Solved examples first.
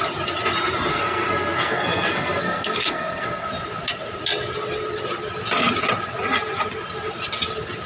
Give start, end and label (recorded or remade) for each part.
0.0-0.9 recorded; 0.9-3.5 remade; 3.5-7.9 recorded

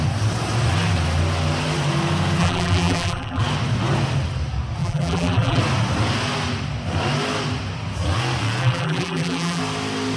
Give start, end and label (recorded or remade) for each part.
0.0-2.4 recorded; 2.4-3.4 remade; 3.4-4.8 recorded; 4.8-5.6 remade; 5.6-8.6 recorded; 8.6-9.6 remade; 9.6-10.2 recorded

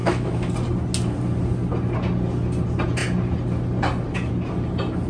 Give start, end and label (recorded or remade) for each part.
0.0-0.5 remade; 0.5-5.1 recorded

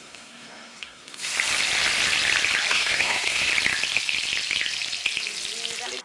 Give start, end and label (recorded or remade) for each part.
0.0-1.3 remade; 1.3-2.7 recorded; 2.7-3.5 remade; 3.5-6.0 recorded

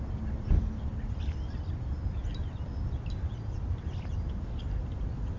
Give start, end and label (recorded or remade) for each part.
0.0-5.4 remade

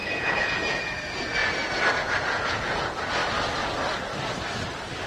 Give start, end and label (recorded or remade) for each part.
0.0-1.4 remade; 1.4-1.9 recorded; 1.9-3.2 remade; 3.2-5.1 recorded

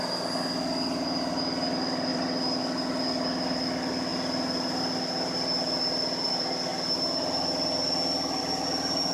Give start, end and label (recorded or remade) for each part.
0.0-2.1 recorded; 2.1-2.6 remade; 2.6-9.1 recorded